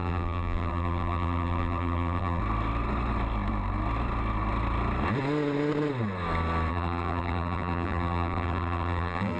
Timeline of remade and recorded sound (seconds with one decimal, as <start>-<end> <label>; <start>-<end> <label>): 0.0-2.4 remade; 2.4-6.7 recorded; 6.7-9.4 remade

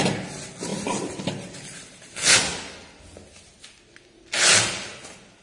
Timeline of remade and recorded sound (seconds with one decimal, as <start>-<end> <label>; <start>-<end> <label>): 0.0-5.4 recorded